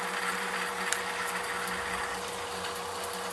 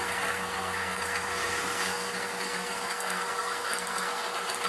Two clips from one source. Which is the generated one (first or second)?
second